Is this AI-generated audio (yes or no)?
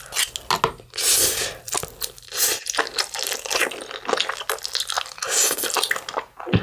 no